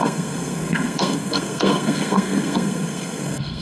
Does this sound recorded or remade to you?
remade